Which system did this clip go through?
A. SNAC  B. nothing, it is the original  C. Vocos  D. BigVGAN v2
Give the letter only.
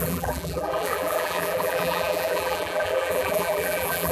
D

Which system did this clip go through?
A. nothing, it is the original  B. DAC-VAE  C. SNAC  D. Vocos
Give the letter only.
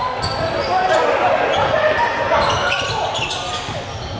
A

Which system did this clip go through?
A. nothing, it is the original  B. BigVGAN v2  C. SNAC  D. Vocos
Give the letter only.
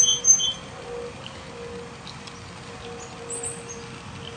A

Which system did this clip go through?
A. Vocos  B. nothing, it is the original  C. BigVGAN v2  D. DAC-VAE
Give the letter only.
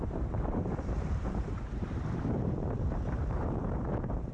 C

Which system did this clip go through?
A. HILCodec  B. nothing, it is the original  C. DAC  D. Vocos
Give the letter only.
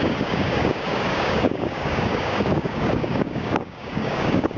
C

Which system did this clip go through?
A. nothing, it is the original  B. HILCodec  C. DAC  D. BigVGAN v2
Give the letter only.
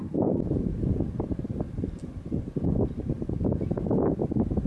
A